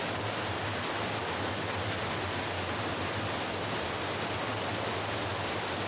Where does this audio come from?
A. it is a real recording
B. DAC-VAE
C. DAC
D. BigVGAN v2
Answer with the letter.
A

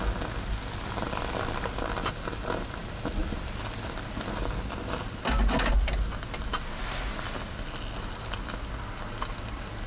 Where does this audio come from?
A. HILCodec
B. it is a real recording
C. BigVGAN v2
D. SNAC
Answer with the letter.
B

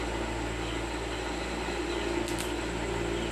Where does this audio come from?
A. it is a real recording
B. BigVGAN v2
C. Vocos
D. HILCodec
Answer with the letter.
A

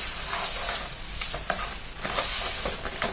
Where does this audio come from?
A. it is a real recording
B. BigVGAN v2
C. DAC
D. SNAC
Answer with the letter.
A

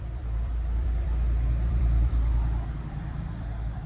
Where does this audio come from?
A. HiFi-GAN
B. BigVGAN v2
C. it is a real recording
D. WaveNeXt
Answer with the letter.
B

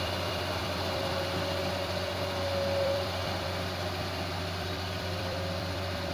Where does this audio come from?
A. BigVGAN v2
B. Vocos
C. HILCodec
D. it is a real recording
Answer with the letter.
A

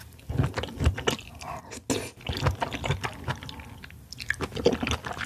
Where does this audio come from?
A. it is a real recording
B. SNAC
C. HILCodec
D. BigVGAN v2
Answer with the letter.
A